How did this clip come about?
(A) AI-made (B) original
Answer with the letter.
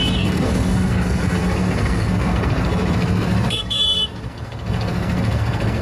A